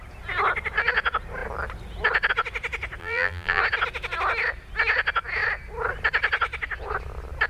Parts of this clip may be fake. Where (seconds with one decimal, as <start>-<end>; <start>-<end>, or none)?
3.0-3.6